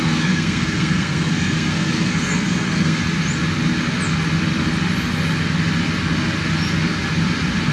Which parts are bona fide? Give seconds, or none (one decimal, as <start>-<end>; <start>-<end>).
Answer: 3.0-7.7